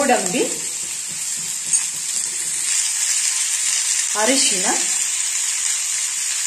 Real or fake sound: real